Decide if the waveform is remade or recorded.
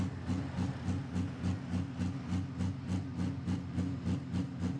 recorded